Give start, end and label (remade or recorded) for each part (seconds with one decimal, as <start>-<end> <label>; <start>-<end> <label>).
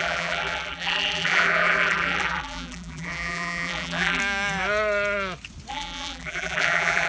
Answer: 0.0-4.2 remade; 4.2-5.7 recorded; 5.7-7.1 remade